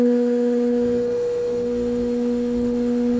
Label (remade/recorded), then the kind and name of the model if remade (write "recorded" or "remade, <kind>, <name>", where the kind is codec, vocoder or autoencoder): remade, autoencoder, DAC-VAE